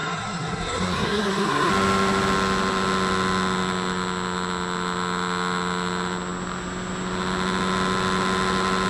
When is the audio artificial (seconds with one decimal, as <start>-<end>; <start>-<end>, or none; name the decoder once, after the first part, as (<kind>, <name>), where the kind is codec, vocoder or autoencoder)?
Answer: 0.0-1.7 (codec, SNAC)